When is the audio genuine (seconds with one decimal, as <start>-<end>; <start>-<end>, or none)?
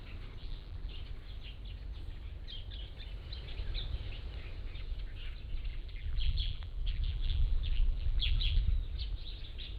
0.0-0.4; 0.9-5.7; 8.6-9.8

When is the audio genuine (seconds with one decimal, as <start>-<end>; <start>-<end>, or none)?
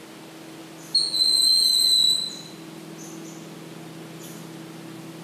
0.0-5.2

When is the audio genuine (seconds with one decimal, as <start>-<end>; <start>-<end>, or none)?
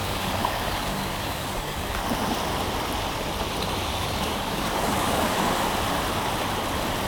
2.0-3.9; 5.3-7.1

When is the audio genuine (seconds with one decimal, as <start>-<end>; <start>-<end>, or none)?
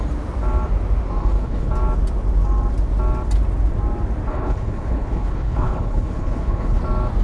0.0-1.2; 1.7-4.3; 6.8-7.2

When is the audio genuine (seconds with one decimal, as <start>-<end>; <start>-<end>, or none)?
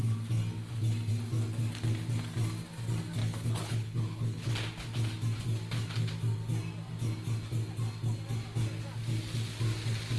0.0-3.2; 4.5-10.2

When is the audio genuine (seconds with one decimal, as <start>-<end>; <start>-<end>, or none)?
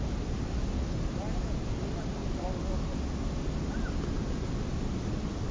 0.0-5.5